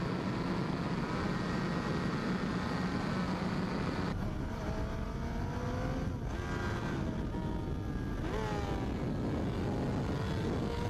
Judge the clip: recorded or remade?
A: recorded